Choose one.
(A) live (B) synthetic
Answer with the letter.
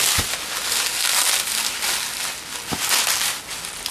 A